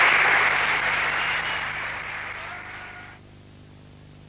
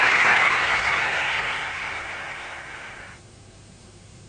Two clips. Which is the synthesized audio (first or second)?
second